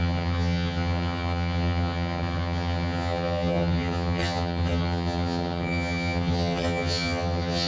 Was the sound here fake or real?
fake